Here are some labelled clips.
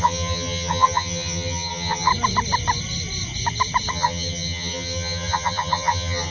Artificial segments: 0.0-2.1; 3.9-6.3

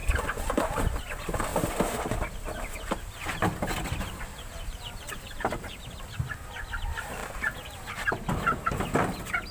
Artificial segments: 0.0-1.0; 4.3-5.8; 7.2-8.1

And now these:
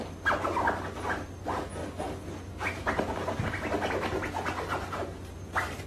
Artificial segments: 1.8-3.4

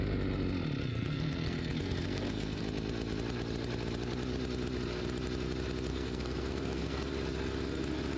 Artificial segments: 0.8-2.6; 5.9-7.1